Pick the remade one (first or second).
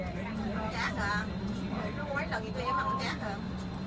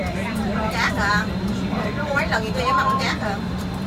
second